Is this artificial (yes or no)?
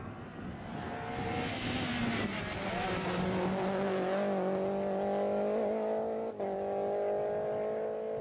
no